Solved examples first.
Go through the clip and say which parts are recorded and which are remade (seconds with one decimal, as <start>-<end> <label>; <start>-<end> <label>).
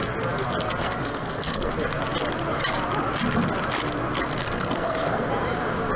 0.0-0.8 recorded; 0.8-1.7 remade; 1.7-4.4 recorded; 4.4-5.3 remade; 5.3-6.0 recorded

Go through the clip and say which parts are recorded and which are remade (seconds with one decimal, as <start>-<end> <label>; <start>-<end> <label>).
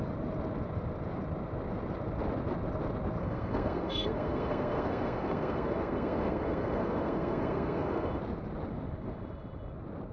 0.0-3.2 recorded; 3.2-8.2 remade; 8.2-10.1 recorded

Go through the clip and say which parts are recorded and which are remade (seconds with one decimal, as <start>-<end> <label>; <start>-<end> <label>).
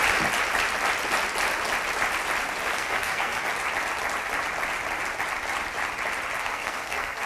0.0-2.7 recorded; 2.7-3.4 remade; 3.4-6.4 recorded; 6.4-7.3 remade